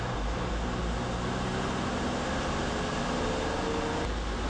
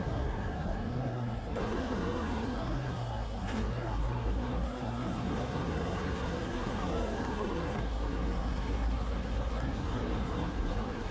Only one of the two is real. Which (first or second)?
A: first